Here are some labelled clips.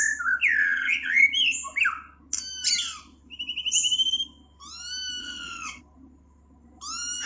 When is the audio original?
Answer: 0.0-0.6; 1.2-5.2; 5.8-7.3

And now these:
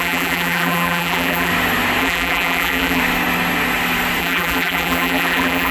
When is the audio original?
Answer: 1.5-2.0; 3.0-4.2

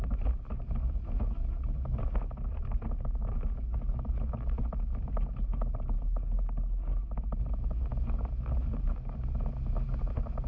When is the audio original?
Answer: 0.0-10.5

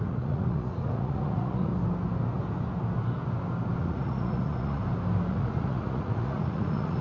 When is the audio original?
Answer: 1.7-3.8; 4.8-5.3

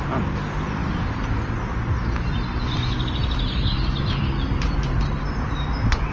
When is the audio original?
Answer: 0.0-0.8; 1.4-3.6; 5.0-6.1

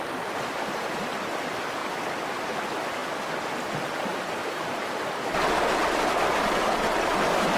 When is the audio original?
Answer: 0.0-7.6

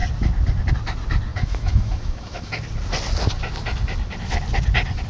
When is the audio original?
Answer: 0.0-1.3; 2.5-5.1